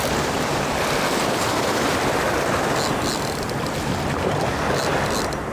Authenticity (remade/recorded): recorded